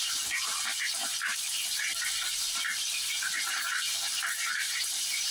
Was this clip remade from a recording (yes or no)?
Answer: yes